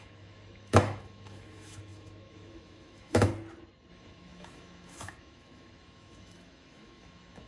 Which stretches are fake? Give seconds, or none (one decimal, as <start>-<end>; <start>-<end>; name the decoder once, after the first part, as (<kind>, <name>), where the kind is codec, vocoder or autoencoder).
0.0-3.3 (autoencoder, DAC-VAE); 3.9-7.5